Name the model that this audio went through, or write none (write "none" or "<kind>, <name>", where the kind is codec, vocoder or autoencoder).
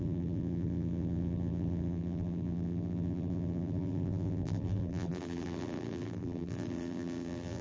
vocoder, BigVGAN v2